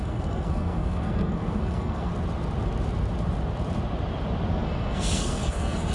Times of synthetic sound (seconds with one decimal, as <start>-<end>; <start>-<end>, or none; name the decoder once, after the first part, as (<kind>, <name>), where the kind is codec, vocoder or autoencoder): 0.0-2.1 (codec, SNAC); 4.5-5.9